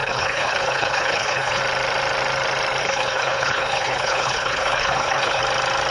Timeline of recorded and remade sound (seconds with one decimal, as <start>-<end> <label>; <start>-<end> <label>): 0.0-1.6 remade; 1.6-2.8 recorded; 2.8-5.4 remade; 5.4-5.9 recorded